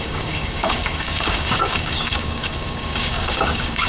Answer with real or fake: fake